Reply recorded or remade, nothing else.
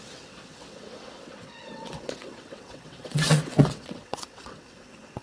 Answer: remade